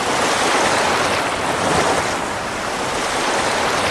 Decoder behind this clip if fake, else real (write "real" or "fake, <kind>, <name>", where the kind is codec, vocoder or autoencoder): real